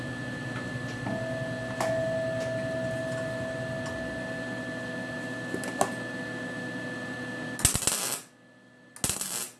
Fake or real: real